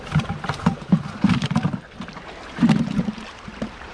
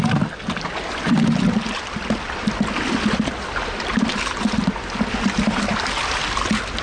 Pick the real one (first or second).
second